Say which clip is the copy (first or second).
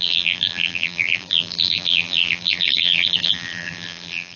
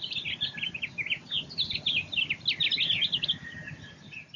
first